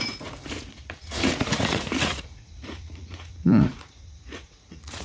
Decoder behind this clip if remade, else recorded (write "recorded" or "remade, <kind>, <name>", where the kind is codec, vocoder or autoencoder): remade, vocoder, Vocos